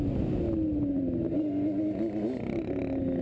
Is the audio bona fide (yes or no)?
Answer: yes